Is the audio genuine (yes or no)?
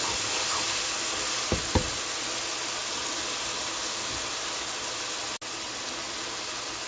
yes